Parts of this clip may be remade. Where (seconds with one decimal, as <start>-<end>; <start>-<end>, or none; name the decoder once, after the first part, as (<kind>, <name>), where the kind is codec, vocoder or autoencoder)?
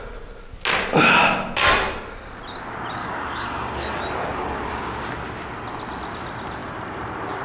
3.0-4.0 (codec, DAC)